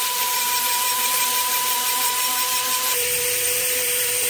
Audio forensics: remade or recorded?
remade